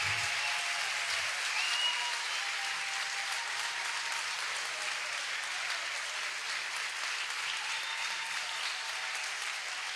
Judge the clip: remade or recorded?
recorded